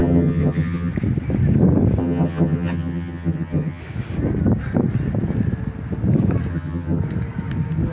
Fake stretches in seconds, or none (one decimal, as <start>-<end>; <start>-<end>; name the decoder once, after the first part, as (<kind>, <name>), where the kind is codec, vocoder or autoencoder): 0.0-0.9 (vocoder, HiFi-GAN); 2.0-3.8; 6.5-7.0

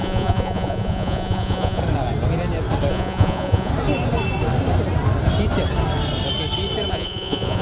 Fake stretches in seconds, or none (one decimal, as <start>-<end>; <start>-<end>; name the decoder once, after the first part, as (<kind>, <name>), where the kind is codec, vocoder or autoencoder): 0.0-1.8 (vocoder, Vocos); 2.9-3.7; 6.9-7.6

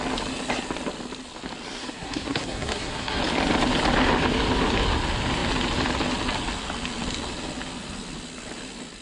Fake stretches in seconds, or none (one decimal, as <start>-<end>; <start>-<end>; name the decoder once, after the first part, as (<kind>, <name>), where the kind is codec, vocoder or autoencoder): 1.8-3.2 (codec, SNAC)

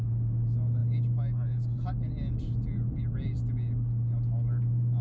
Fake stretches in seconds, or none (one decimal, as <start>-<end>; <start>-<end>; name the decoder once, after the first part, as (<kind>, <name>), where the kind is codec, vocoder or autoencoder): none

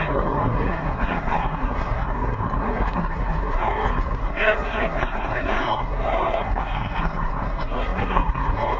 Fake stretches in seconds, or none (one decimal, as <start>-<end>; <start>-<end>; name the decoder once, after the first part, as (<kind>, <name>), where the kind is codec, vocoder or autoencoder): 0.0-8.8 (codec, SNAC)

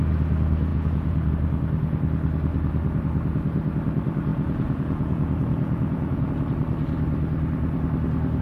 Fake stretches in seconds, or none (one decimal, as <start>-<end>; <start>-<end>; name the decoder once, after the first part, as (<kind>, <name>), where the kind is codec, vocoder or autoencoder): 0.7-1.3 (vocoder, Vocos); 4.3-6.3

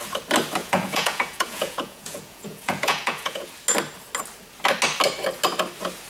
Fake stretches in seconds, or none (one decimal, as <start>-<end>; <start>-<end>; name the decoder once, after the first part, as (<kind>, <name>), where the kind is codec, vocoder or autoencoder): 0.6-3.5 (vocoder, Vocos)

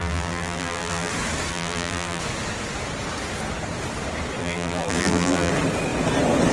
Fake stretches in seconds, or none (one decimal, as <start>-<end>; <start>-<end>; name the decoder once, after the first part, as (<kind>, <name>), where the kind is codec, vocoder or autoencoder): 0.0-1.1 (vocoder, BigVGAN v2); 1.5-2.2; 4.4-5.5